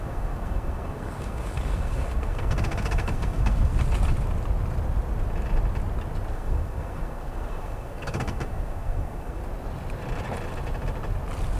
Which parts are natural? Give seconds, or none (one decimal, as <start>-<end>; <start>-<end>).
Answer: 3.7-6.3; 9.4-11.6